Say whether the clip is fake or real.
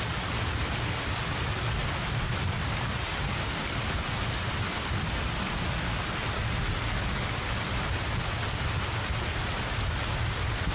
real